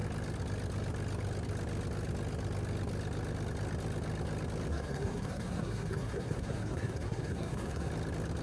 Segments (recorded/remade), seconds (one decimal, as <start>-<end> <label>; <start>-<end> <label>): 0.0-4.7 recorded; 4.7-7.9 remade; 7.9-8.4 recorded